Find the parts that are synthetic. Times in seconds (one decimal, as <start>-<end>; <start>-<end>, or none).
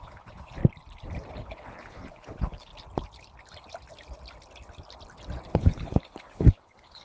0.0-0.6; 1.3-2.7; 5.5-7.0